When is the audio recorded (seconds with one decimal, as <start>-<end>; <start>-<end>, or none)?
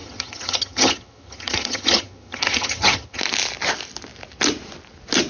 3.2-5.3